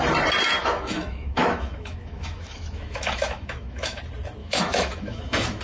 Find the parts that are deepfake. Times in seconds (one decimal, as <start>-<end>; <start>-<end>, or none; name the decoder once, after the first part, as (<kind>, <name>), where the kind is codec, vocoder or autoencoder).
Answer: 0.6-4.0 (autoencoder, DAC-VAE); 4.4-5.6